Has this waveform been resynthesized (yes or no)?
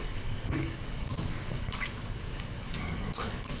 yes